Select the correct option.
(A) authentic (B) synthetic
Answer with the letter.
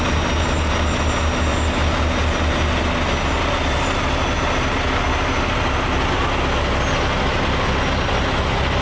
A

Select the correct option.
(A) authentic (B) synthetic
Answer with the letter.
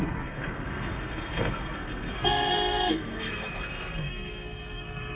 B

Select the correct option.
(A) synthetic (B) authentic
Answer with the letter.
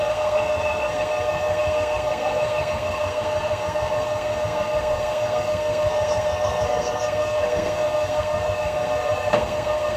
A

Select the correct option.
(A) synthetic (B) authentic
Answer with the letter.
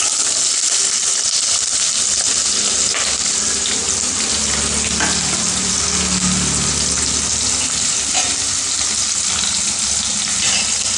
B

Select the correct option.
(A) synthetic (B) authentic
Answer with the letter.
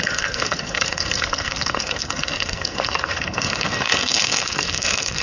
A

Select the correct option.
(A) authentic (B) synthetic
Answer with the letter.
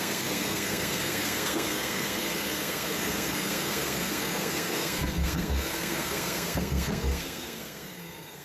B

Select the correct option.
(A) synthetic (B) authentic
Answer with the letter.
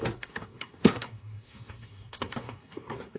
A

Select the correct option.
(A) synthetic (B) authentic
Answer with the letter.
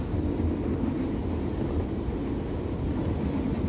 B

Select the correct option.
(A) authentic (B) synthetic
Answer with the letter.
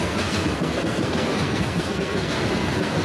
B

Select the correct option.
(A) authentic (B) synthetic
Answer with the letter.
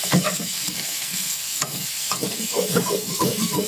B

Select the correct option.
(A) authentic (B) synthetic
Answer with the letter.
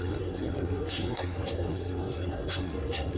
B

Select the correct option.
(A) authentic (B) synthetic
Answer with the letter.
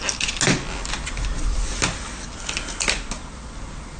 A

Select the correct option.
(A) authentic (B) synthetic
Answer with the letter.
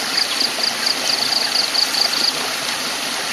A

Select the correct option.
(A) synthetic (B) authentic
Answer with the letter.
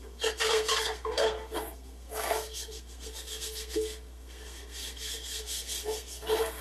A